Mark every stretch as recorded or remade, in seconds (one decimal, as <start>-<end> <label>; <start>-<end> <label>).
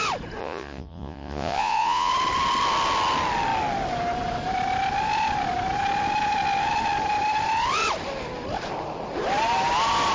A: 0.0-0.4 recorded; 0.4-2.1 remade; 2.1-10.1 recorded